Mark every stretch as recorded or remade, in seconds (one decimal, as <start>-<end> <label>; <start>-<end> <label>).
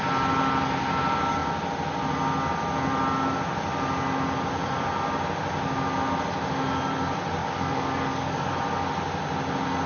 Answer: 0.0-7.4 recorded; 7.4-8.5 remade; 8.5-9.9 recorded